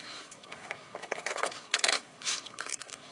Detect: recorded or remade remade